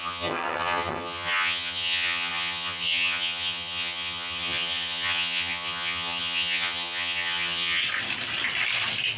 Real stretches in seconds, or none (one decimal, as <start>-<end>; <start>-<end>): 7.8-9.2